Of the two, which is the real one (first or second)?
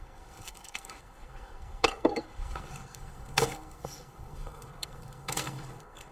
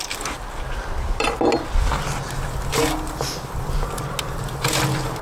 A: second